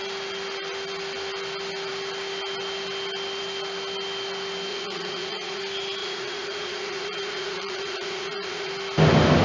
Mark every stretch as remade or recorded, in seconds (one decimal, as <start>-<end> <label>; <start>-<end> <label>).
0.0-4.7 recorded; 4.7-5.6 remade; 5.6-6.0 recorded; 6.0-8.7 remade; 8.7-9.4 recorded